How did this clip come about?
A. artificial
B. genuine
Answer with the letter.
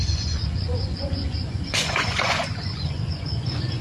A